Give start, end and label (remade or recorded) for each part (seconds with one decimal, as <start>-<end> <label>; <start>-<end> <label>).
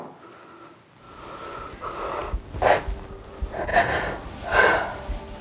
0.0-5.4 recorded